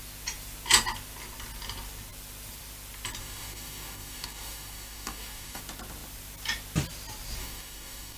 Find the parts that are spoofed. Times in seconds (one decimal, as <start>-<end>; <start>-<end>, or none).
3.2-5.6; 7.4-8.2